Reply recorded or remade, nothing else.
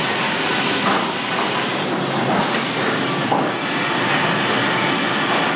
recorded